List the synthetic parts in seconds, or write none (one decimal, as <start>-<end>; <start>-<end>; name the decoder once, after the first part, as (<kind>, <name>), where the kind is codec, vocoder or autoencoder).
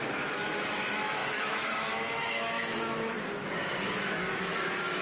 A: 0.0-5.0 (autoencoder, DAC-VAE)